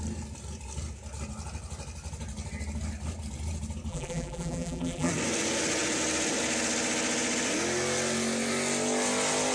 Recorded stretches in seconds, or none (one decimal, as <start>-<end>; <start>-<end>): 0.0-3.9; 5.1-9.5